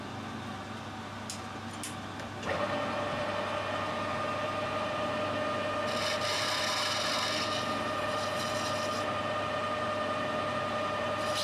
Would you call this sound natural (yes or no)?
yes